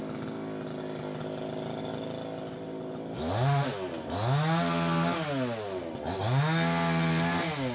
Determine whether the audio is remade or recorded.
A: recorded